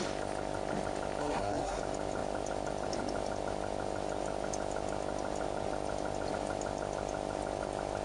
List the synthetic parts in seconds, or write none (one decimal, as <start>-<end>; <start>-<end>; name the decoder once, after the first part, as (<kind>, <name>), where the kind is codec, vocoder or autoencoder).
1.2-1.8 (codec, SNAC)